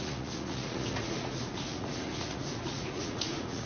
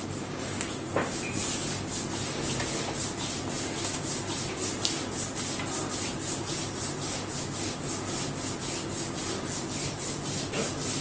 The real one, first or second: second